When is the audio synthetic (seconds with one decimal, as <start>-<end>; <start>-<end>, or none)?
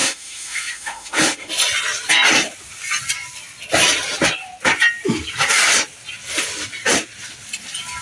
0.0-1.5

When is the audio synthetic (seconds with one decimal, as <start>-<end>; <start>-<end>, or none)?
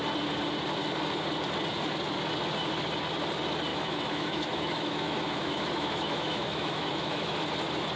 3.7-7.5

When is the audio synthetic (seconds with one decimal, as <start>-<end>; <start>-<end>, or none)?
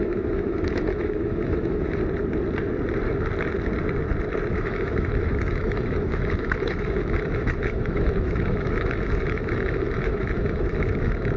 0.0-2.0; 4.5-11.4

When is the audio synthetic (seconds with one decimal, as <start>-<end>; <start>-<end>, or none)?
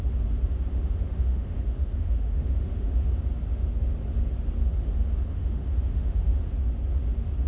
0.7-3.1; 5.3-6.4